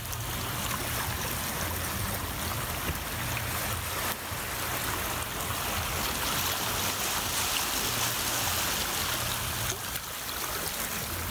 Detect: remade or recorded recorded